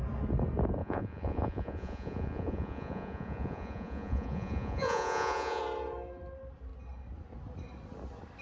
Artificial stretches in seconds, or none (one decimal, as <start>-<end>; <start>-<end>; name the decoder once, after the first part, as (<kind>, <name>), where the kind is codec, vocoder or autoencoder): 0.8-5.6 (vocoder, Vocos)